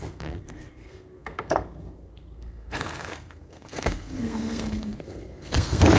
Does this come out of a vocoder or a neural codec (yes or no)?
yes